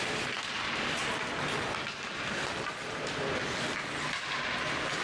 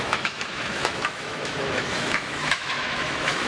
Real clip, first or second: first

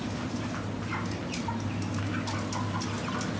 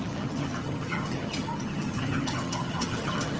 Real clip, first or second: first